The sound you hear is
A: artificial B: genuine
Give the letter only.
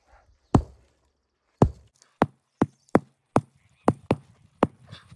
B